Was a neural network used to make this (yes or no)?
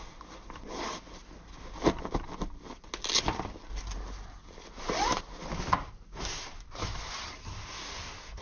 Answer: no